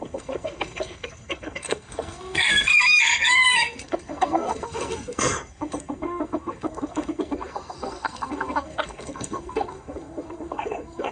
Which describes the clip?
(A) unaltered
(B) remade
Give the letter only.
B